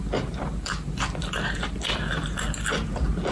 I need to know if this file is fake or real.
real